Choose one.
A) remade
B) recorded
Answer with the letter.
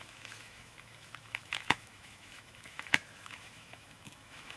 A